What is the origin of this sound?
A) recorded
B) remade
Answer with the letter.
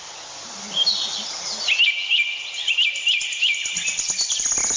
A